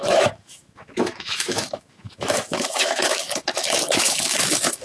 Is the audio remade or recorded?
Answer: remade